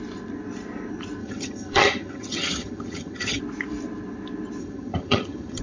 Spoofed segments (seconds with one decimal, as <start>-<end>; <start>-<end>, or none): 1.2-3.4; 4.6-5.6